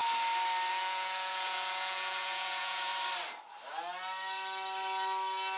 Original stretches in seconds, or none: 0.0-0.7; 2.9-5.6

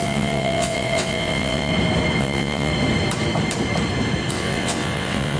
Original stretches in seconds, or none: 1.7-2.2; 2.7-4.3

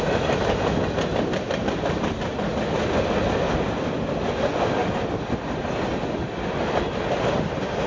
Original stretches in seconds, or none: 0.0-1.1; 2.9-7.9